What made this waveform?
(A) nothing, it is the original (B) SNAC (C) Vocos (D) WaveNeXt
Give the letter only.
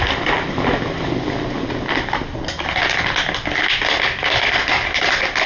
A